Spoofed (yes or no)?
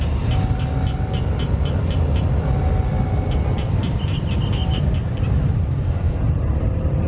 no